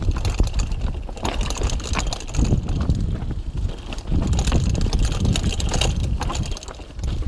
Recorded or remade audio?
recorded